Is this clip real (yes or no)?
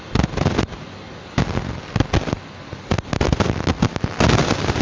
yes